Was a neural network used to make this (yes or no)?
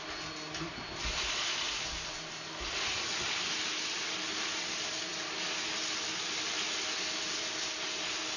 no